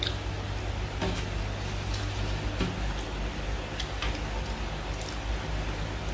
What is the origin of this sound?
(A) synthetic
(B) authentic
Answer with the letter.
B